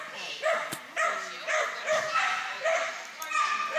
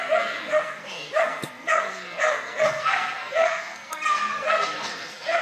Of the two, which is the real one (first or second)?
first